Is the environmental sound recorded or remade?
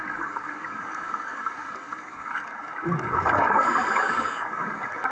remade